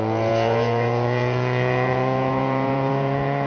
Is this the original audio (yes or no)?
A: no